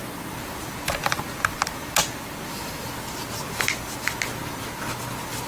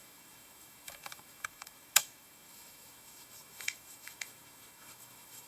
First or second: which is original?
first